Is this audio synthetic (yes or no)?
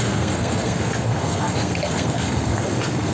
yes